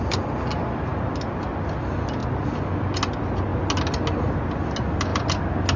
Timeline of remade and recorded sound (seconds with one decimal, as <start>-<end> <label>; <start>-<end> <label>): 0.0-5.8 recorded